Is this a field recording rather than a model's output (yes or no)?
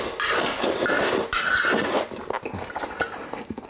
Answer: no